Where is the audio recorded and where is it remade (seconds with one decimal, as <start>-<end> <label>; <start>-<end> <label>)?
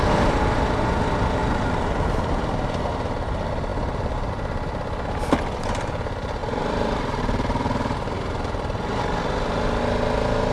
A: 0.0-1.4 recorded; 1.4-2.9 remade; 2.9-6.4 recorded; 6.4-9.0 remade; 9.0-10.5 recorded